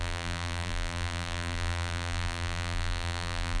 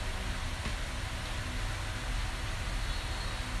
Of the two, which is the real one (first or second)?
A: second